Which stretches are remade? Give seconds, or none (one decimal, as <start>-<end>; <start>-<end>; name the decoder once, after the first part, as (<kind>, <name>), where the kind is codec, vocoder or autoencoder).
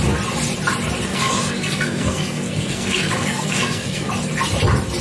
1.1-4.1 (codec, SNAC)